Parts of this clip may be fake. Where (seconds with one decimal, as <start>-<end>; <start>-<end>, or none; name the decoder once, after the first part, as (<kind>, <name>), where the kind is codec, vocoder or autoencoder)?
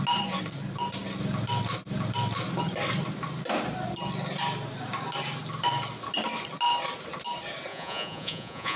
7.7-8.8 (vocoder, Vocos)